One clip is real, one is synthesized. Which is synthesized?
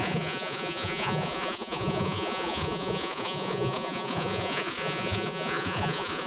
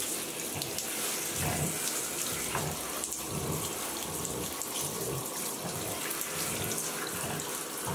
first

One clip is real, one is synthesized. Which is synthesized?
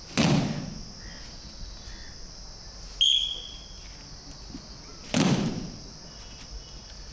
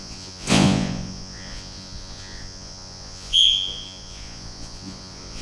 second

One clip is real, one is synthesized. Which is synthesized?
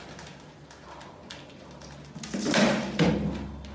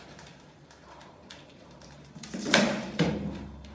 second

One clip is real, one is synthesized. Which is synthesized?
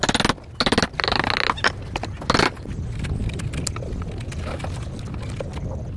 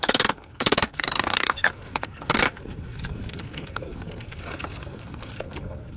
second